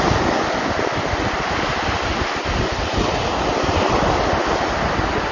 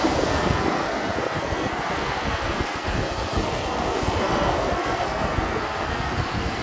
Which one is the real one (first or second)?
first